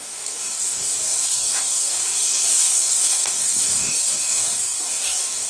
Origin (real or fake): fake